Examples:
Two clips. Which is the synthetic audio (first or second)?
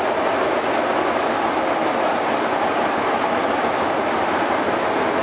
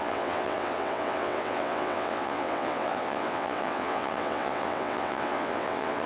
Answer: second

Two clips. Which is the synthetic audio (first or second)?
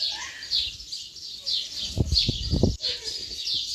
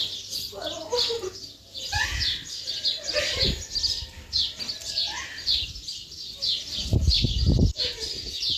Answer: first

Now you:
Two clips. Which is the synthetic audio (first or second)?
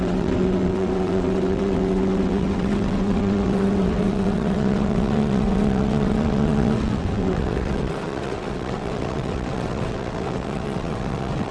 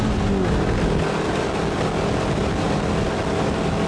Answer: first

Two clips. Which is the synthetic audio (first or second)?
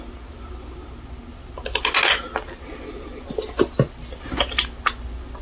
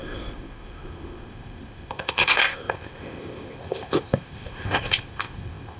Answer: second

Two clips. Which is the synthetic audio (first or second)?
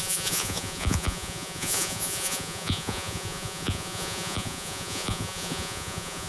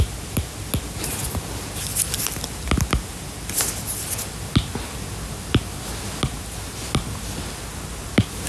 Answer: first